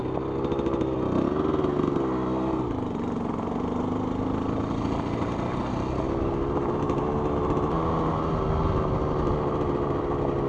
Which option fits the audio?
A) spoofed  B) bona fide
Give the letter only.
B